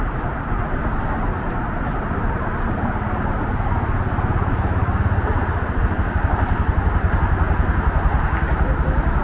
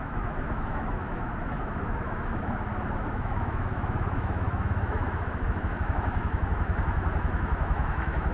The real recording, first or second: first